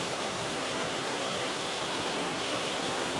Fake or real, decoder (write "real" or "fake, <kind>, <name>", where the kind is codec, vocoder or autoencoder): fake, codec, SNAC